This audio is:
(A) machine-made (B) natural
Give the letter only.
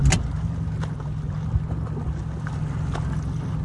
B